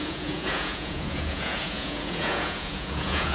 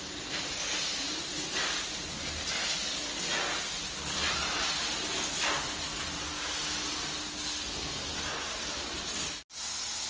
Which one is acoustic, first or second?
second